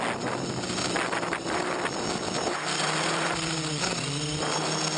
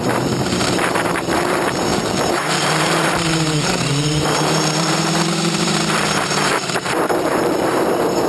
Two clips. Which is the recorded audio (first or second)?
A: first